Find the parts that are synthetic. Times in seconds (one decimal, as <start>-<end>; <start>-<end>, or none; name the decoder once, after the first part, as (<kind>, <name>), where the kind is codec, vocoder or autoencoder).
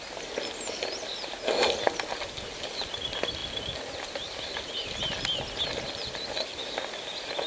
none